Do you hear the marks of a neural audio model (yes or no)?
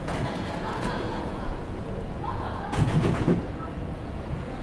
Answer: yes